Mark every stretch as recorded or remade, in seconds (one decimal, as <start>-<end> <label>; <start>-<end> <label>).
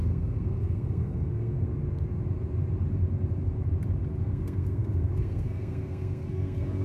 0.0-1.7 remade; 1.7-4.2 recorded; 4.2-6.8 remade